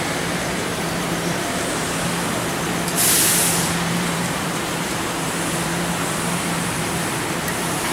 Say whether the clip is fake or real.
fake